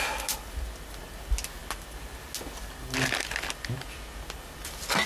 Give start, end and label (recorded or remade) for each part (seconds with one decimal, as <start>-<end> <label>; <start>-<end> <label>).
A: 0.0-5.1 recorded